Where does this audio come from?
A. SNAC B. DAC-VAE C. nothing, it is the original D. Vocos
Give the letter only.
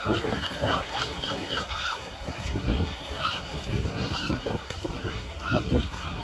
A